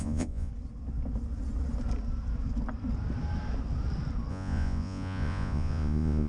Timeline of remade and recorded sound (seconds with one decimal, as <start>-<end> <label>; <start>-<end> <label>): 0.0-0.5 remade; 0.5-4.3 recorded; 4.3-6.3 remade